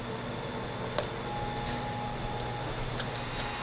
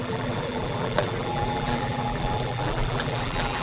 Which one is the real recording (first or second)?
first